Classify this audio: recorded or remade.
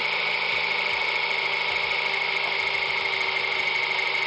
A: recorded